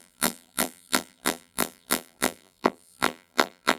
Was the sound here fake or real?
fake